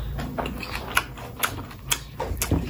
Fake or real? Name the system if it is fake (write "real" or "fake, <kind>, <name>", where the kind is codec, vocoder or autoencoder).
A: real